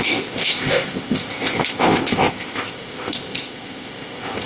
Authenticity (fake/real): fake